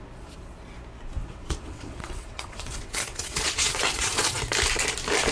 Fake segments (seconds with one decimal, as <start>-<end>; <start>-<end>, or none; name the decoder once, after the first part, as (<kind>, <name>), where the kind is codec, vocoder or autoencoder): 1.2-4.4 (vocoder, WaveNeXt)